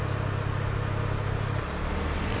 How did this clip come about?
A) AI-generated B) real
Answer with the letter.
B